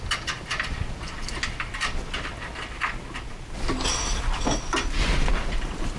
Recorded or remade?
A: recorded